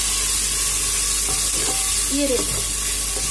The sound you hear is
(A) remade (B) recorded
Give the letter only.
B